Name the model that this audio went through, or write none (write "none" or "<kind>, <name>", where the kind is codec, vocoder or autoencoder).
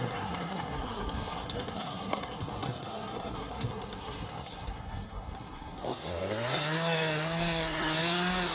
codec, SNAC